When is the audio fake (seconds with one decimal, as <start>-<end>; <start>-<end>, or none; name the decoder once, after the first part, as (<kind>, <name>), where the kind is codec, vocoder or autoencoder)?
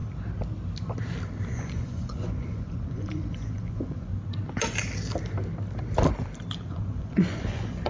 1.5-4.1 (vocoder, Vocos); 6.7-7.9